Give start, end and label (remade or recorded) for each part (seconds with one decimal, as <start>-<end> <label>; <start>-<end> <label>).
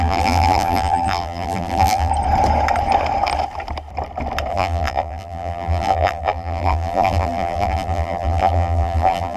0.0-2.1 remade; 2.1-4.5 recorded; 4.5-9.4 remade